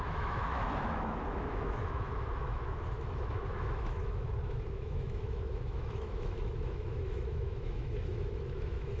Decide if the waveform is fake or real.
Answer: fake